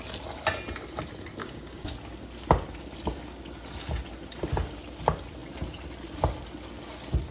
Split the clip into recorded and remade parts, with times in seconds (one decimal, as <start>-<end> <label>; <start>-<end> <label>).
0.0-1.4 recorded; 1.4-1.9 remade; 1.9-7.3 recorded